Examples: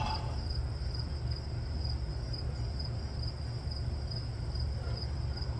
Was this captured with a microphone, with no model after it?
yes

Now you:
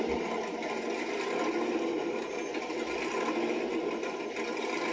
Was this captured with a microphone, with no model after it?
yes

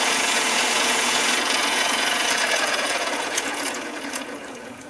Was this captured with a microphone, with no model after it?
no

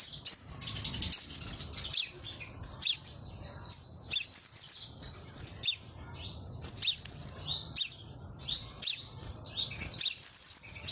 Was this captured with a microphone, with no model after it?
yes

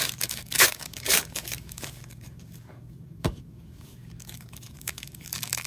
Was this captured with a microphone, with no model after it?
no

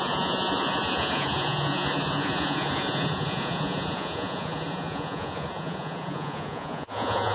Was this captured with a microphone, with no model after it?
no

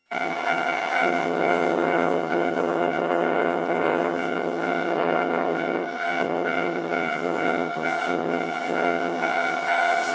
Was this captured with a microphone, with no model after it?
no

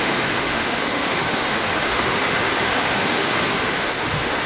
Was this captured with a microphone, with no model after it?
no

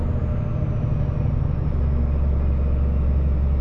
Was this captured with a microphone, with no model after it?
yes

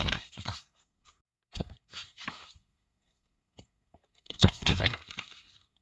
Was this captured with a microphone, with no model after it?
no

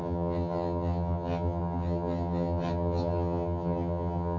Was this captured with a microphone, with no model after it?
no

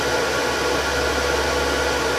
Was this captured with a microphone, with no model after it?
yes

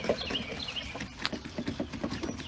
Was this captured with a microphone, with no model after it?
yes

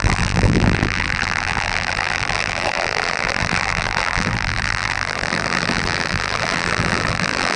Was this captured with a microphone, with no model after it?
no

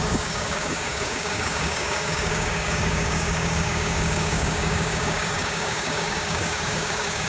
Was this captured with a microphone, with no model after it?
no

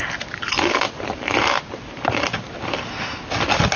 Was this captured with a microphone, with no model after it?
yes